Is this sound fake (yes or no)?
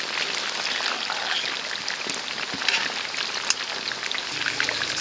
no